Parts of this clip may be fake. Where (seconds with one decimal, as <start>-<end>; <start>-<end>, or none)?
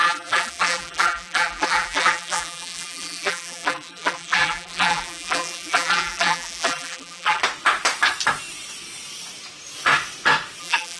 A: 0.0-7.4; 10.6-11.0